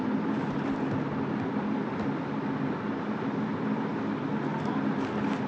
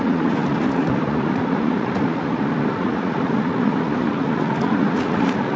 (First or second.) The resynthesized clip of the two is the second